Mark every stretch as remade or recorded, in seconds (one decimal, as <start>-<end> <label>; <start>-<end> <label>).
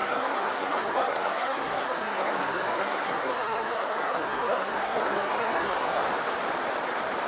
0.0-6.0 remade; 6.0-7.3 recorded